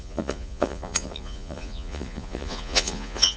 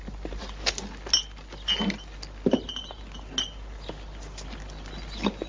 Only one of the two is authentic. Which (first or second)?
second